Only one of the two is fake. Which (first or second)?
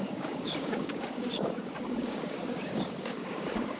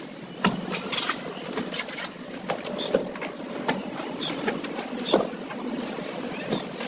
first